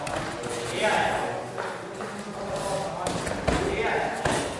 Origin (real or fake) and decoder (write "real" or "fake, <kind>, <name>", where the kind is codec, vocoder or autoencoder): real